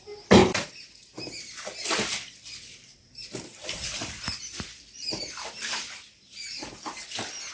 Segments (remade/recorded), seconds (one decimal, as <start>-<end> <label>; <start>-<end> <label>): 0.0-2.9 recorded; 2.9-6.7 remade; 6.7-7.5 recorded